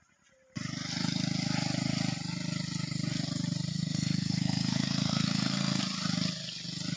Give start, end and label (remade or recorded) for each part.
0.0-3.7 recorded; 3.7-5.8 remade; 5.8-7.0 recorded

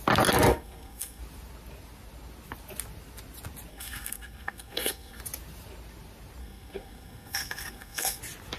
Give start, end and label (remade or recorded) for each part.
0.0-0.5 recorded; 0.5-1.2 remade; 1.2-3.7 recorded; 3.7-5.2 remade; 5.2-6.4 recorded; 6.4-8.2 remade; 8.2-8.6 recorded

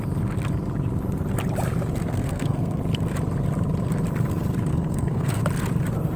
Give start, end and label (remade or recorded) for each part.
0.0-2.2 recorded; 2.2-2.8 remade; 2.8-4.7 recorded; 4.7-5.4 remade; 5.4-6.2 recorded

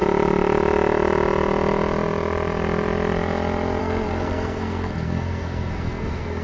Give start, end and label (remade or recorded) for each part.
0.0-3.8 recorded; 3.8-6.4 remade

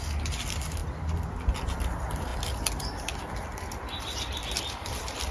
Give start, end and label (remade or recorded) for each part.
0.0-5.3 recorded

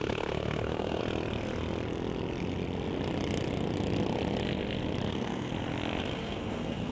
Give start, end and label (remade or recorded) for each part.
0.0-1.0 remade; 1.0-5.1 recorded; 5.1-5.5 remade; 5.5-6.0 recorded; 6.0-6.9 remade